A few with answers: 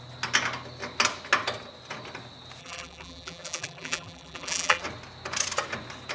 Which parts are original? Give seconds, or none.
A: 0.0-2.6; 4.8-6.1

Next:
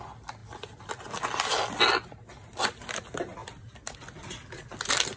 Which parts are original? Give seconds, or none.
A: 0.0-3.4; 3.9-5.2

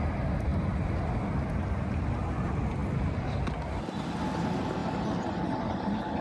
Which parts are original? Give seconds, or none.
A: 0.0-0.5; 1.2-6.2

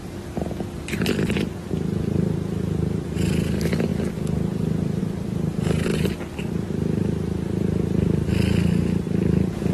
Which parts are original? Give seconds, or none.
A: 0.0-1.1; 5.9-7.0